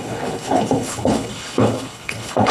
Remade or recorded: remade